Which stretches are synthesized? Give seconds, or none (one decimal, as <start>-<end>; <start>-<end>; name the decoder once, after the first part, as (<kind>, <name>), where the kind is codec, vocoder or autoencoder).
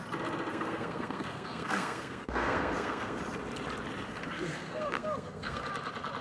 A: 0.5-3.2 (codec, SNAC); 4.1-5.7